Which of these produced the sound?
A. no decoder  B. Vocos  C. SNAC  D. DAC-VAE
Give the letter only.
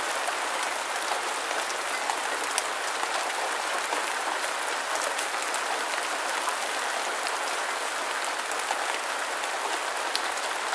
A